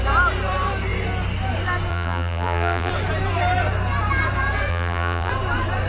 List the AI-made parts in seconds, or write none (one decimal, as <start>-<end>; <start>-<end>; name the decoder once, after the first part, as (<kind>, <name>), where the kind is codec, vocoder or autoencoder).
1.9-2.9 (vocoder, BigVGAN v2); 4.7-5.3